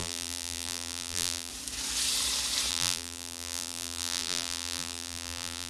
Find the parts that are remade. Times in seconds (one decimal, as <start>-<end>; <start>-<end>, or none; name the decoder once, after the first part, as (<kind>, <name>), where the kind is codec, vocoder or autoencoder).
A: 0.0-1.5 (vocoder, BigVGAN v2); 2.7-5.7